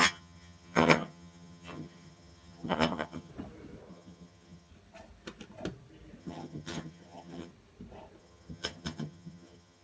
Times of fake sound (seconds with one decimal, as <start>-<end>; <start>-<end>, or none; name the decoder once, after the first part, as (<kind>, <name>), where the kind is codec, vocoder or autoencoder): 0.0-3.3 (vocoder, HiFi-GAN); 3.9-4.7; 6.2-7.5; 8.2-9.8